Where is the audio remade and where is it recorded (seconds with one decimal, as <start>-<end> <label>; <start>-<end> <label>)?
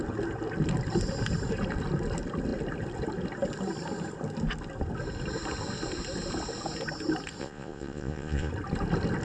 0.0-7.4 recorded; 7.4-8.5 remade; 8.5-9.2 recorded